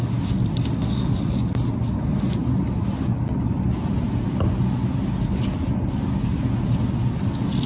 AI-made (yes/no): no